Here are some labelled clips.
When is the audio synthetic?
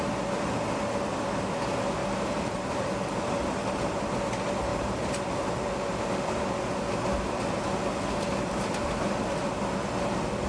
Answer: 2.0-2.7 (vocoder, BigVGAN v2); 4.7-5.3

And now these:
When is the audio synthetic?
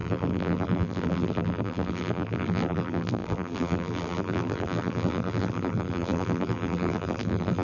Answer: 0.0-7.6 (vocoder, BigVGAN v2)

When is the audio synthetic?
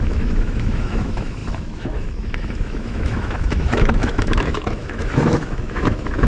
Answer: 0.0-6.3 (autoencoder, DAC-VAE)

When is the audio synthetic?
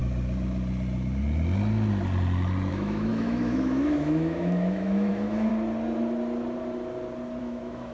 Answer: 2.7-5.5 (autoencoder, DAC-VAE); 7.4-7.9